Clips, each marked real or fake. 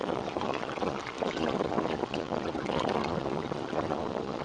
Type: fake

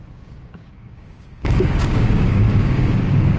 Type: fake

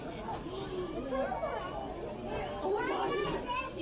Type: real